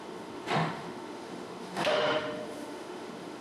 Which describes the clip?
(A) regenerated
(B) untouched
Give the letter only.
A